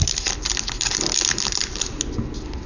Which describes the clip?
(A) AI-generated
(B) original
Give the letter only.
B